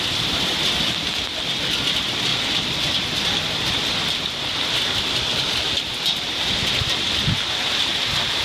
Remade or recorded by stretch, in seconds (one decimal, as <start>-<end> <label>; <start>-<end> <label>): 0.0-8.4 recorded